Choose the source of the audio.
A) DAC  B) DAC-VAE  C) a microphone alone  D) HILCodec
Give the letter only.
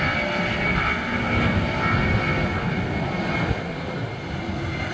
C